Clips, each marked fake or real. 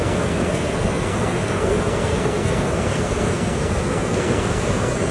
fake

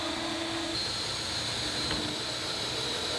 real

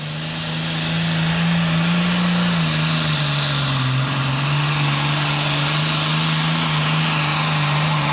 real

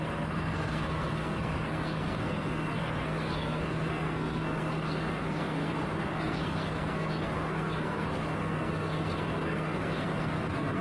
fake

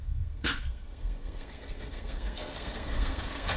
fake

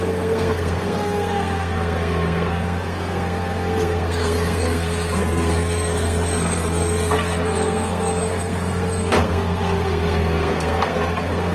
fake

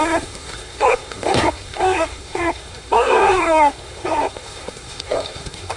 fake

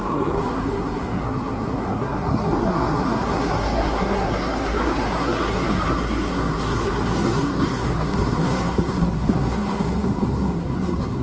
fake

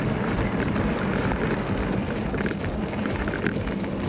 real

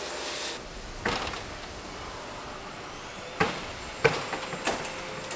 real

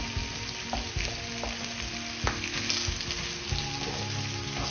real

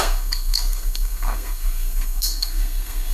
fake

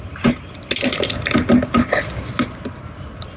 real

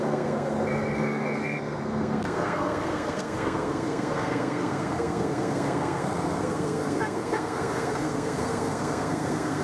fake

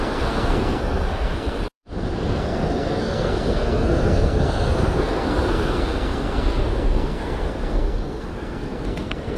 fake